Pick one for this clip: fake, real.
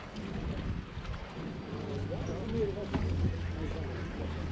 real